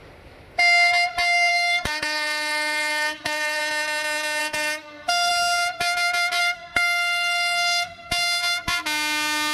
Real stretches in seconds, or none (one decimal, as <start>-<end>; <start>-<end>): 0.0-1.5; 3.6-4.4; 5.3-6.4; 8.1-9.5